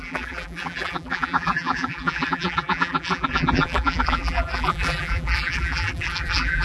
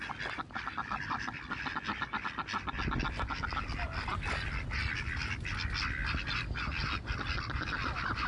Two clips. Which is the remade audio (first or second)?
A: first